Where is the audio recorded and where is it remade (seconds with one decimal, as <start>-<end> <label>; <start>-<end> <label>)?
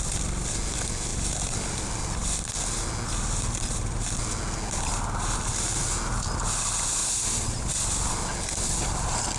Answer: 0.0-9.4 recorded